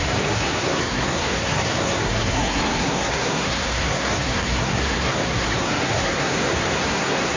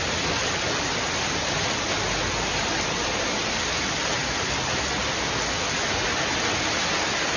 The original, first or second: second